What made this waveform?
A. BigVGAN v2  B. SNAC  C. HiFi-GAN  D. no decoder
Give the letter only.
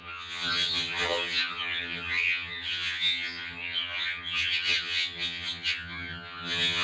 C